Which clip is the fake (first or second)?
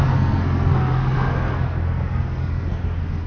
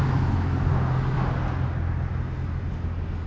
first